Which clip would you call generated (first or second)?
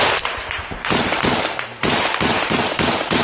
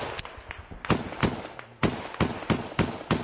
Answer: first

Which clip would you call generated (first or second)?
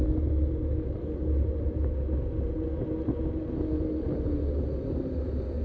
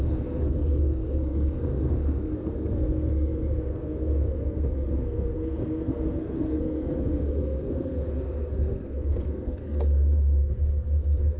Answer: second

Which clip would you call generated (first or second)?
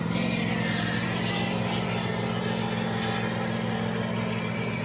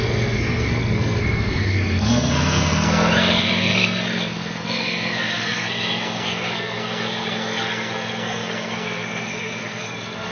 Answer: second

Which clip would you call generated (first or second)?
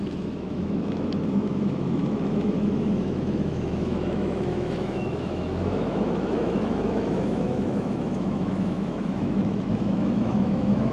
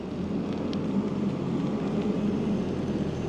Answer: first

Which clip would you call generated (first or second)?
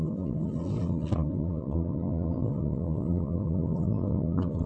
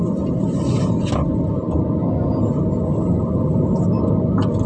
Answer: first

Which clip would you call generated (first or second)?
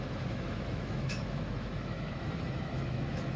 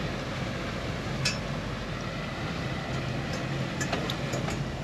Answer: first